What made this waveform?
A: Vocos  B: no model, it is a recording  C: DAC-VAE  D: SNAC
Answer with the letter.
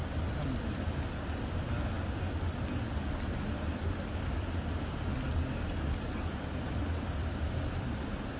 B